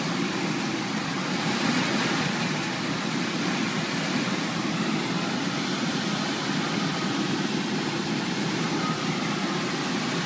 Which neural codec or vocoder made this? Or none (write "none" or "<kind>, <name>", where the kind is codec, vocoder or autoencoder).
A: none